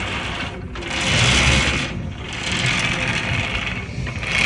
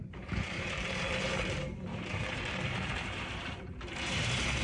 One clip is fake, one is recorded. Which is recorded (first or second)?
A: first